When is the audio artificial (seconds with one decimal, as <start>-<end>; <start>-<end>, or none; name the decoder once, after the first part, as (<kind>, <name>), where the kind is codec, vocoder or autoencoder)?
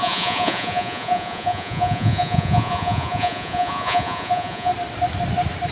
0.0-4.7 (vocoder, Vocos)